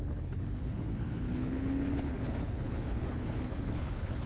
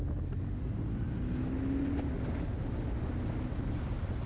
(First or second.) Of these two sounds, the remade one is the first